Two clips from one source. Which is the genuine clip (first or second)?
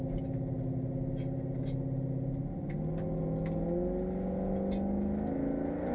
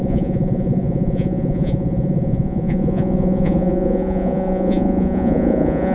first